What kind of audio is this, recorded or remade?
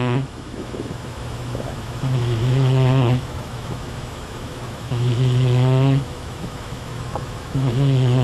remade